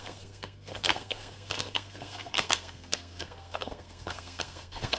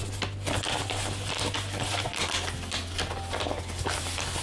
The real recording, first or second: second